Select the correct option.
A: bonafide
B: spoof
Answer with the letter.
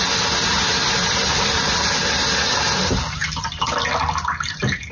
A